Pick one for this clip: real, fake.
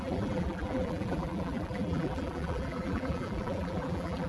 fake